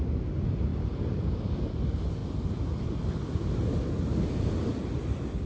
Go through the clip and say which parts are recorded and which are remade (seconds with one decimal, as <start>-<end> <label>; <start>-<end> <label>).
0.0-5.5 recorded